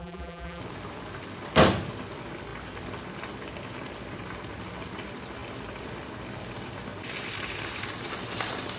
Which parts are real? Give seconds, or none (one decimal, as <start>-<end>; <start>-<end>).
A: 0.6-8.8